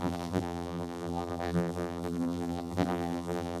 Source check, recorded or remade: remade